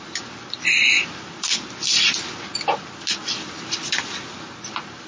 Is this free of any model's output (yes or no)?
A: yes